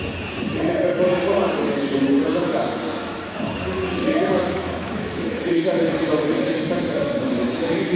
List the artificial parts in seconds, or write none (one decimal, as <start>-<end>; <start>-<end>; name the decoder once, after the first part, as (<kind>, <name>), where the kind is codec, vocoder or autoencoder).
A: 2.3-3.4 (autoencoder, DAC-VAE); 4.0-6.1; 6.5-8.0